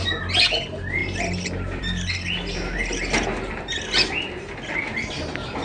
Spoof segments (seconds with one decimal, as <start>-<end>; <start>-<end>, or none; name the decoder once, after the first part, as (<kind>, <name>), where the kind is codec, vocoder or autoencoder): none